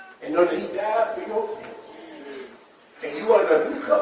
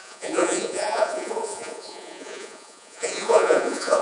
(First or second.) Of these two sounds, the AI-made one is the second